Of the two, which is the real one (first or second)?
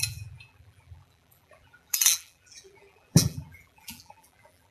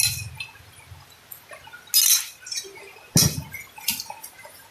second